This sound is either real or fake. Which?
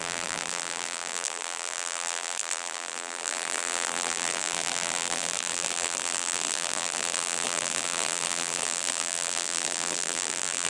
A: fake